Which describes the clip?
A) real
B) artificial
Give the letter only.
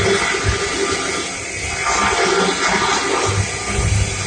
A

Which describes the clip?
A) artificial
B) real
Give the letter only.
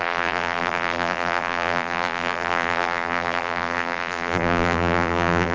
A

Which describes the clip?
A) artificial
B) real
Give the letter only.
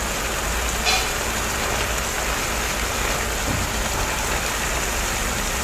B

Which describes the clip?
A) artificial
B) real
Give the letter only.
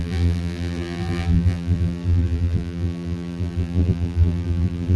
A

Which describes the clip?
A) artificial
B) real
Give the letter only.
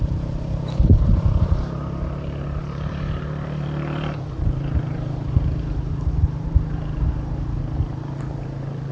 A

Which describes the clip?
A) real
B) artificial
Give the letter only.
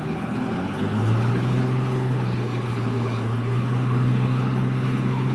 B